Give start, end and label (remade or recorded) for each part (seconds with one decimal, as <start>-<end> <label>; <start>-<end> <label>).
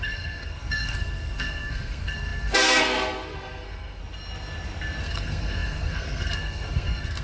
0.0-4.0 remade; 4.0-5.0 recorded; 5.0-7.2 remade